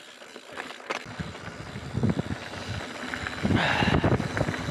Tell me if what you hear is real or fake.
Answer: real